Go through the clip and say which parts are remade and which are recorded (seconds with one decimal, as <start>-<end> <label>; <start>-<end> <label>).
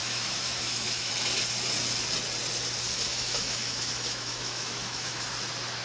0.0-1.1 remade; 1.1-3.1 recorded; 3.1-5.2 remade; 5.2-5.8 recorded